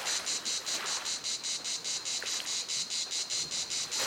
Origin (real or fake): real